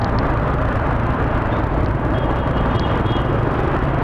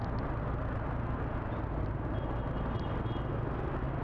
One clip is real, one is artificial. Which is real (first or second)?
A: second